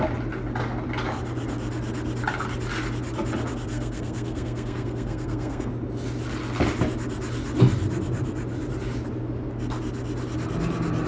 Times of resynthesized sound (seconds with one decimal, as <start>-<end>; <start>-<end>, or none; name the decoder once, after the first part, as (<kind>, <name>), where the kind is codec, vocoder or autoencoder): 3.7-5.7 (codec, SNAC)